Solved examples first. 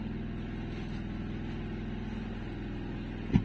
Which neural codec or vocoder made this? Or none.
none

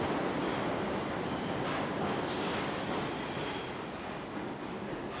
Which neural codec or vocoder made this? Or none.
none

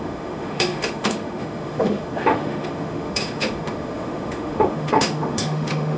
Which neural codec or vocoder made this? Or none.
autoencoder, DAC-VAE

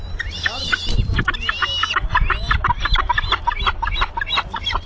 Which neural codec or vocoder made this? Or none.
none